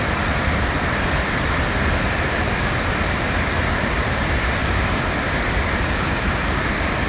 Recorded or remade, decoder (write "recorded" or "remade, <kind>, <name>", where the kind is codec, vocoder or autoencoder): recorded